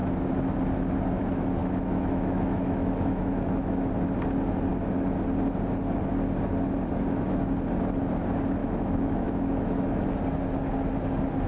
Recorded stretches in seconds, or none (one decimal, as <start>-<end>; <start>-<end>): 0.0-1.6; 3.9-8.6; 10.0-11.5